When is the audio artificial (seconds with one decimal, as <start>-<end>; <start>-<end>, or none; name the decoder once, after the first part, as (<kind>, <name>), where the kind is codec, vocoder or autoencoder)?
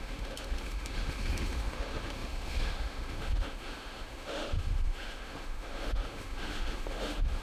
0.0-7.4 (autoencoder, DAC-VAE)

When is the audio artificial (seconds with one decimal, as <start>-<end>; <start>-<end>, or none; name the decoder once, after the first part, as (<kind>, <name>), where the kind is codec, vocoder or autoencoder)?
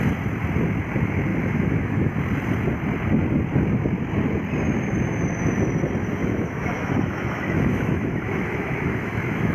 1.3-2.1 (autoencoder, DAC-VAE); 6.2-9.5